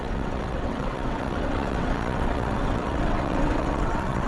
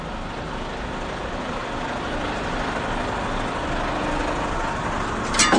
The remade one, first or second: first